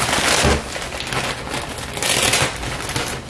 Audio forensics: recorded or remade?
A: recorded